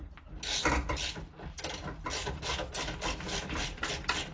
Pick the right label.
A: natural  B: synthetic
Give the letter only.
A